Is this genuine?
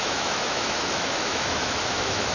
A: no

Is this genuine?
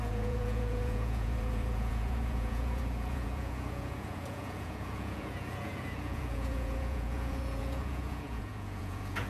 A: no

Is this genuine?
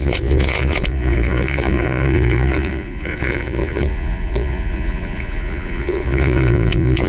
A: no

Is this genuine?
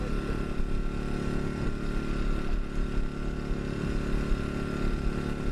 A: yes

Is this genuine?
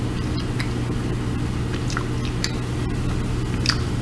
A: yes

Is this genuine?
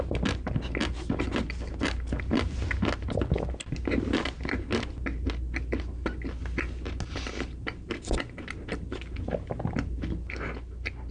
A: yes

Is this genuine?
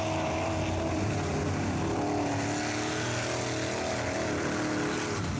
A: yes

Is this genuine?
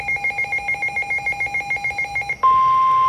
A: yes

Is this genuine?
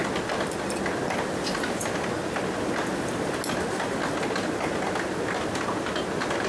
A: yes